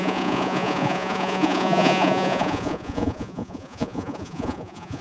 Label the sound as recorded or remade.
remade